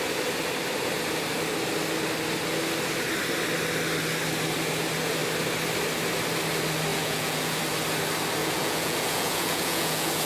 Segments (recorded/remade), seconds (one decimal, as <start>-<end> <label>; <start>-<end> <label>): 0.0-6.9 recorded; 6.9-7.6 remade; 7.6-8.4 recorded; 8.4-10.3 remade